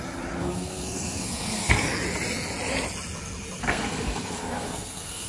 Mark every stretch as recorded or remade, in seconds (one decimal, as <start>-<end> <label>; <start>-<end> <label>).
0.0-0.4 recorded; 0.4-1.7 remade; 1.7-3.6 recorded; 3.6-5.3 remade